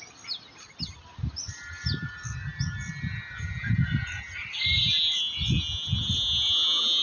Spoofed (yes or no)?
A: no